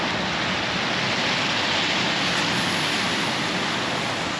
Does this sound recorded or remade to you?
recorded